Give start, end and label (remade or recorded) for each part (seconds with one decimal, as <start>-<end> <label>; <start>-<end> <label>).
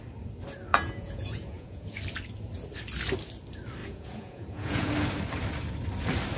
0.0-0.7 recorded; 0.7-2.0 remade; 2.0-3.8 recorded; 3.8-4.9 remade; 4.9-6.4 recorded